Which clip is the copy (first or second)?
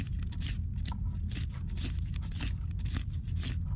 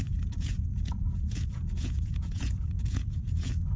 second